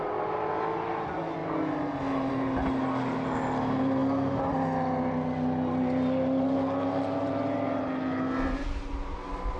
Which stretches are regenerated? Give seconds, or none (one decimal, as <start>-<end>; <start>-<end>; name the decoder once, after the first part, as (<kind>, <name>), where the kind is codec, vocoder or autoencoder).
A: none

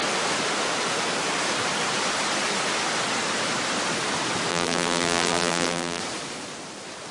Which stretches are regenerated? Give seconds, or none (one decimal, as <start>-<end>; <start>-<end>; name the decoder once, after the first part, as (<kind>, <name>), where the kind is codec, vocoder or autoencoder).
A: 4.5-6.0 (vocoder, BigVGAN v2)